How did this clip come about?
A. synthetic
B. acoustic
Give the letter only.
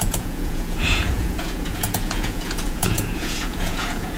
A